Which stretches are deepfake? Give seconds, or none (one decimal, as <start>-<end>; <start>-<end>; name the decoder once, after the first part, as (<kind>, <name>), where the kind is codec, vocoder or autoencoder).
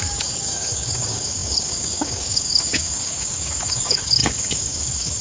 0.0-5.2 (codec, DAC)